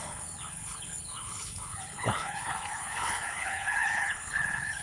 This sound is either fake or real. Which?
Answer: fake